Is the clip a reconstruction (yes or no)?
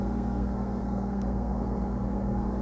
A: yes